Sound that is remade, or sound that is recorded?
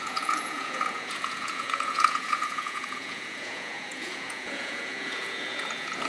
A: remade